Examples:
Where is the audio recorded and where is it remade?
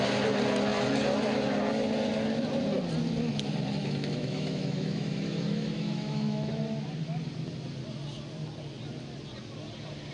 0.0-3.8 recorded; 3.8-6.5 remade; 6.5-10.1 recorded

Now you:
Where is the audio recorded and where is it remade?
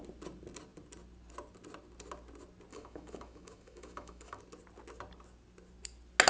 0.0-2.7 recorded; 2.7-4.4 remade; 4.4-6.3 recorded